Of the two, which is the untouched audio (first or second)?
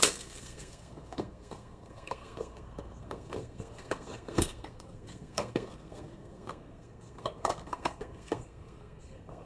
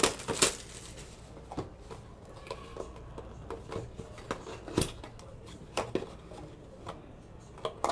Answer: second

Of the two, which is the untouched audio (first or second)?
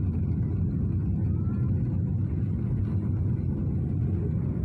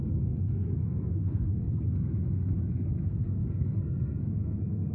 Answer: first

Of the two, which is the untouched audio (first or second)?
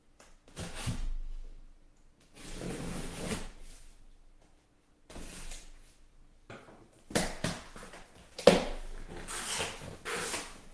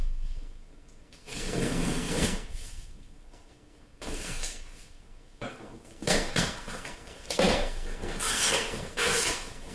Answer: first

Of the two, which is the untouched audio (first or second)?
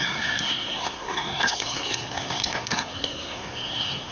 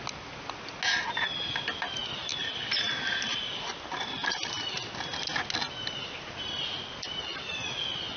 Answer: second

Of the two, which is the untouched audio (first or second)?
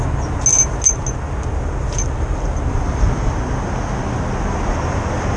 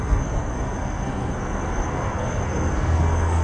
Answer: first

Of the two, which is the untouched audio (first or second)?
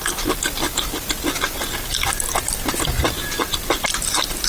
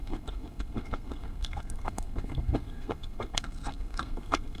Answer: first